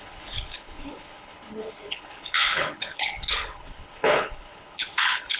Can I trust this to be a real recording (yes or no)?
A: no